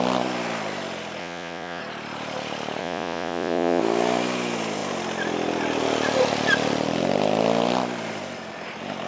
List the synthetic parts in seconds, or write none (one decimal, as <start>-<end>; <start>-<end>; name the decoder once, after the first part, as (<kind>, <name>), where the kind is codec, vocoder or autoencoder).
1.2-1.8 (vocoder, Vocos); 2.8-3.8